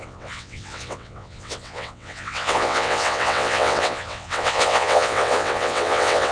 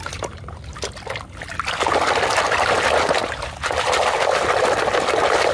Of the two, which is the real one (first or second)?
second